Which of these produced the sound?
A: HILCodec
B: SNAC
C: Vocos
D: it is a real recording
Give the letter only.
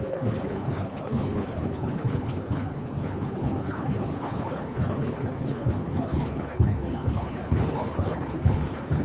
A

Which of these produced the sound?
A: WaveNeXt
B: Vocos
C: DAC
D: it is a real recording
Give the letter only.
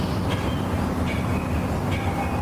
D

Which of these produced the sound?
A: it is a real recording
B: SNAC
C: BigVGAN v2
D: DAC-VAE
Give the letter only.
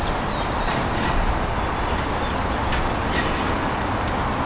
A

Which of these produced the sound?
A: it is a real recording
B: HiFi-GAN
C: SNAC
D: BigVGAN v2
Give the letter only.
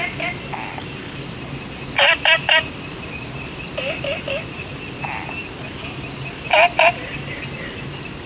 A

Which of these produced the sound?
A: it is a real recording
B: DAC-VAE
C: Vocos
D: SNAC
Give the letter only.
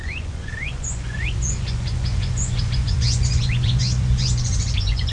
C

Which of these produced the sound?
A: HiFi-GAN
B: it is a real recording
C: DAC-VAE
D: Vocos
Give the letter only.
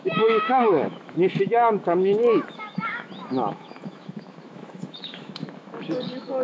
C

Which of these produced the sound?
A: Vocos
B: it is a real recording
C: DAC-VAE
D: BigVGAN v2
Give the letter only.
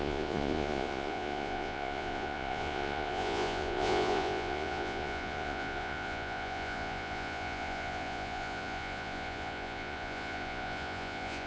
A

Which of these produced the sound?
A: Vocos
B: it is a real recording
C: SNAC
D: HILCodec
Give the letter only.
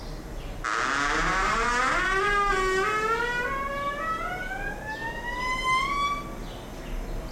B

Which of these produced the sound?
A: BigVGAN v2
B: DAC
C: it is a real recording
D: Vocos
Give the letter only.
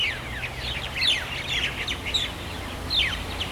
C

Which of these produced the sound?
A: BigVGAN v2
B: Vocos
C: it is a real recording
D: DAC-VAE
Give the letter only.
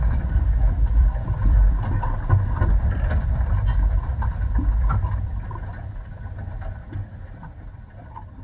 A